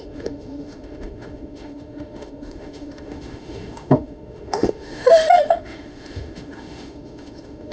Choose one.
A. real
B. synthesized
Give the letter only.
B